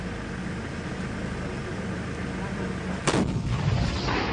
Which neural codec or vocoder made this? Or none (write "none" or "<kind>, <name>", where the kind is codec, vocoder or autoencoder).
none